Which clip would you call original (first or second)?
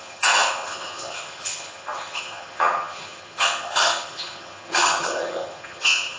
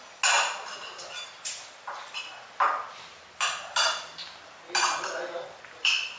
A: second